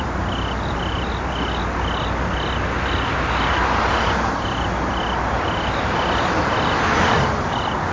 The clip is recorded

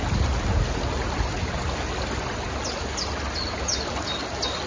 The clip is recorded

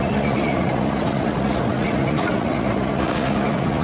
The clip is remade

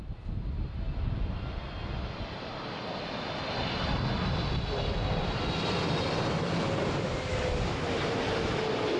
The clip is recorded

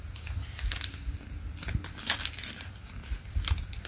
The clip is recorded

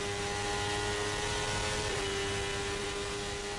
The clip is recorded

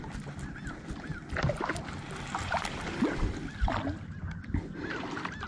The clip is recorded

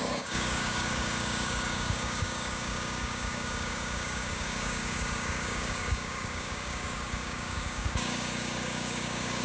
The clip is remade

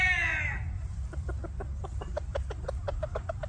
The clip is recorded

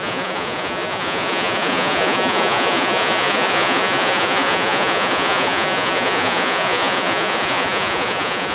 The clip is remade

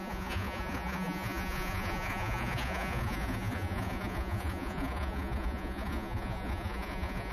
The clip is remade